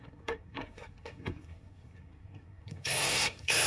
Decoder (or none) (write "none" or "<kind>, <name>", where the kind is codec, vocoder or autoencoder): codec, SNAC